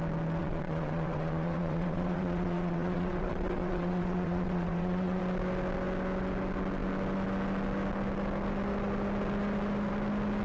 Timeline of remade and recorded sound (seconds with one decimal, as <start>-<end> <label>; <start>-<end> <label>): 0.0-0.4 recorded; 0.4-5.2 remade; 5.2-10.4 recorded